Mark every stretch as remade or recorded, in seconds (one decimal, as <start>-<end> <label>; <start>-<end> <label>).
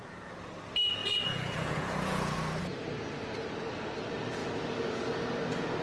0.0-1.0 recorded; 1.0-2.6 remade; 2.6-5.8 recorded